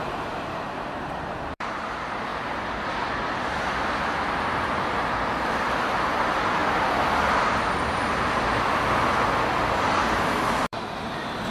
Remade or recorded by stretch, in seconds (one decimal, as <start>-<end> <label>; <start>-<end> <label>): 0.0-2.3 remade; 2.3-6.1 recorded; 6.1-6.6 remade; 6.6-10.0 recorded; 10.0-11.5 remade